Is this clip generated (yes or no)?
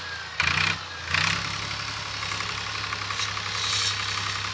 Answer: no